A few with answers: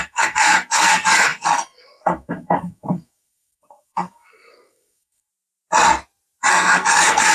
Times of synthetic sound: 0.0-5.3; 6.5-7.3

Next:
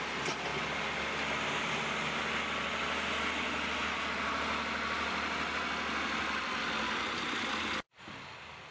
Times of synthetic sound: none